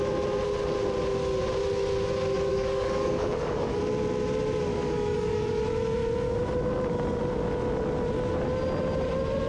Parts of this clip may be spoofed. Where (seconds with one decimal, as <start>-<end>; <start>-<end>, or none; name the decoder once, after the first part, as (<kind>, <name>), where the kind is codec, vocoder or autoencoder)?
2.5-3.8 (codec, DAC); 4.7-5.6